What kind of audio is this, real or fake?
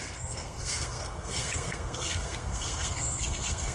fake